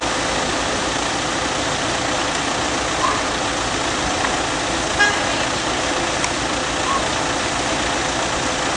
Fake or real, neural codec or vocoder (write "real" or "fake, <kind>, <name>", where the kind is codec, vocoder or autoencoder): real